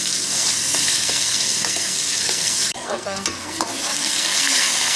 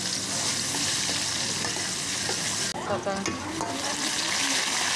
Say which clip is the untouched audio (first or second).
second